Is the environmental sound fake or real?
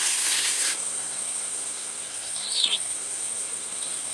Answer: fake